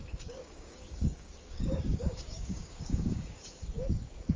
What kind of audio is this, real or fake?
fake